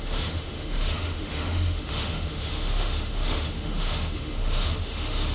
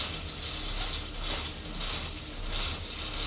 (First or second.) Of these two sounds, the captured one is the second